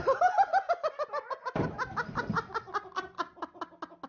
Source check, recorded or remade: recorded